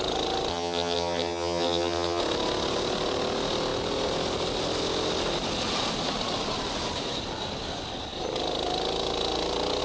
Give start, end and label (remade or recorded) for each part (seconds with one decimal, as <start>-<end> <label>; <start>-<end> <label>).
0.0-0.5 recorded; 0.5-2.2 remade; 2.2-9.8 recorded